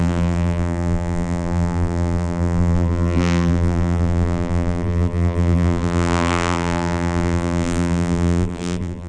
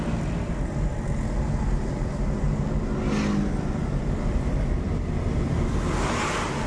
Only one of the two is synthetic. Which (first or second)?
first